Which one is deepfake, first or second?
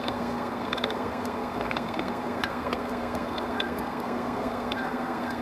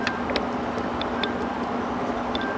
first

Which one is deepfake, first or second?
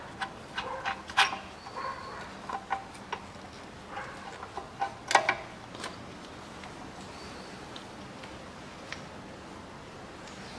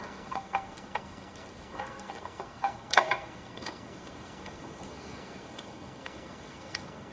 second